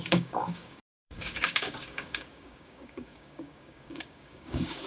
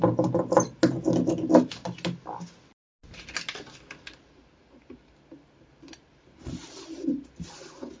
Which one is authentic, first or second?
second